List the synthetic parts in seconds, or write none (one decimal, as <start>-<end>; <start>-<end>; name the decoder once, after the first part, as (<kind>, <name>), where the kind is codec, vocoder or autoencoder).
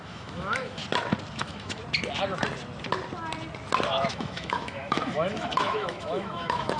0.0-0.8 (autoencoder, DAC-VAE); 1.3-1.8; 4.1-6.8